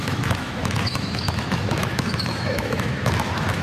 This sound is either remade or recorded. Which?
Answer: remade